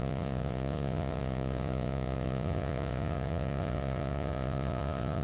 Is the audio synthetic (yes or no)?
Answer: yes